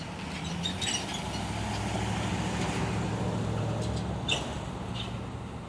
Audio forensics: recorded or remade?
recorded